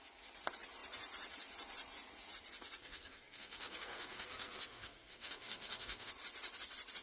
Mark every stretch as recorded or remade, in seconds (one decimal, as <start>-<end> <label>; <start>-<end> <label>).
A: 0.0-2.8 recorded; 2.8-6.1 remade; 6.1-7.0 recorded